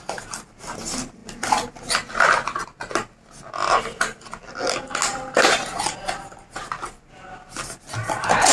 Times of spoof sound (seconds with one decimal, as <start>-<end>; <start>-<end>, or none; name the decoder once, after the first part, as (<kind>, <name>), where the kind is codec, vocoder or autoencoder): none